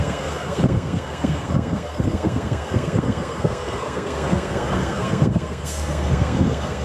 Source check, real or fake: fake